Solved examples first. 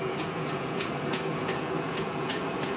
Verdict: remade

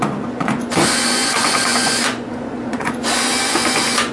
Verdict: remade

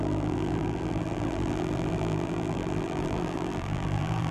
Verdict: remade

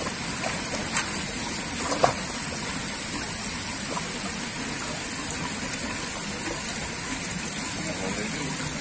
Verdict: recorded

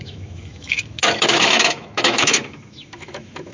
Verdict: remade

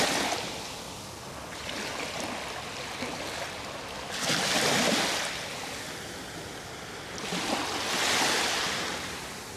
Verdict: recorded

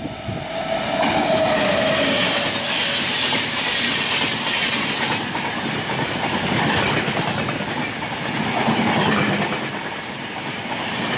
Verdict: recorded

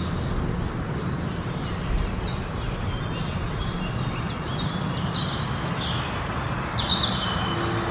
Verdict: recorded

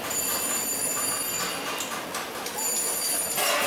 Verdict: recorded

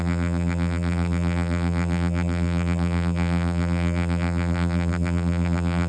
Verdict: remade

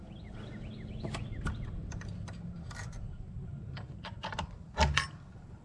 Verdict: recorded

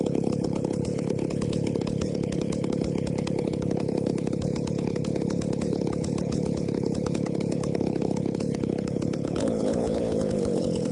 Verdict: remade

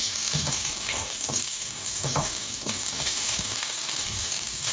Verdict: remade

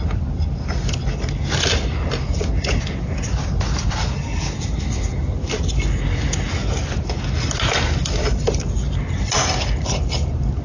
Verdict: recorded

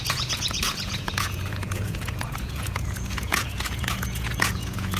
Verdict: remade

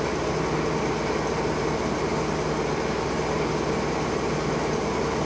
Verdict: recorded